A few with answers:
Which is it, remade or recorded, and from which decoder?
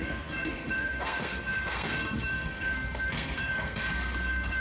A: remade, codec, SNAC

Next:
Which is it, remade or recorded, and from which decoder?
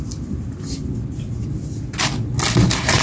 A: recorded